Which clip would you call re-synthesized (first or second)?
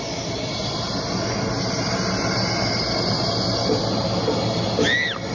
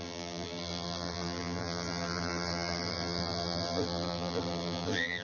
second